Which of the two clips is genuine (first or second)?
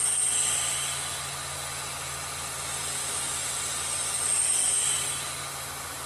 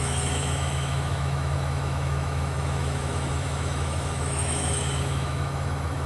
first